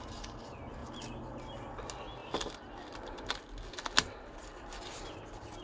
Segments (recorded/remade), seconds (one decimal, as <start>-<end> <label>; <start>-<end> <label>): 0.0-5.6 recorded